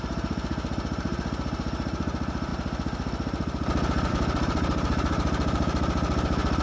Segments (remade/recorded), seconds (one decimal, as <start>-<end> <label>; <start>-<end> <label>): 0.0-2.5 remade; 2.5-4.1 recorded; 4.1-6.6 remade